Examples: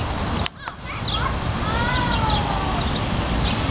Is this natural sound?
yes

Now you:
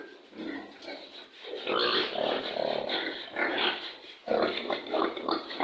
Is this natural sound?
yes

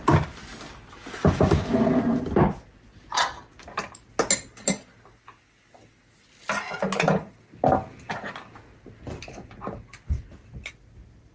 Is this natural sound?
yes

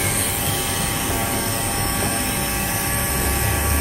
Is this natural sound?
no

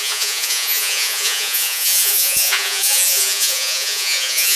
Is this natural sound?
no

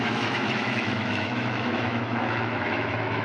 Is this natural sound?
no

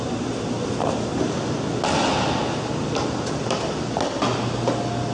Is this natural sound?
yes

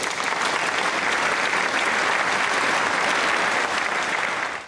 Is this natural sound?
yes